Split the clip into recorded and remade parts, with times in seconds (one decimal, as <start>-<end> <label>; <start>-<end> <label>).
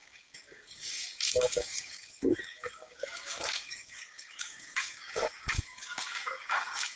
0.0-7.0 remade